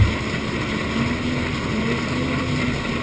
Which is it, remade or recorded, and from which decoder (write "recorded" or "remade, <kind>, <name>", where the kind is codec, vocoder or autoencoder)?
recorded